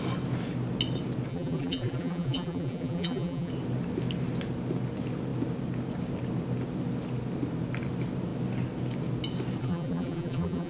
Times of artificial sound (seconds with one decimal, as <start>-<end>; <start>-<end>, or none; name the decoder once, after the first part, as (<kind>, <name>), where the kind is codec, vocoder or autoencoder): 1.3-3.5 (vocoder, BigVGAN v2); 9.6-10.7